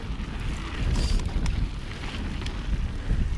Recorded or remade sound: recorded